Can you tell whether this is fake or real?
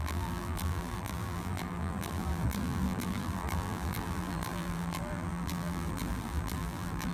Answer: fake